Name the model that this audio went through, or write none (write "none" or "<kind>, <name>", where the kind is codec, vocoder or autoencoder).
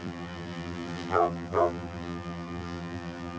vocoder, BigVGAN v2